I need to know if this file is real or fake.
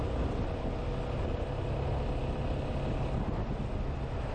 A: real